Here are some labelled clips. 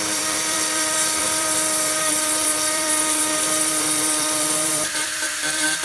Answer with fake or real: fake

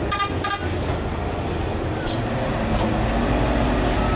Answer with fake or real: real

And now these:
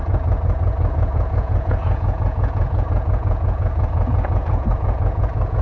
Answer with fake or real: fake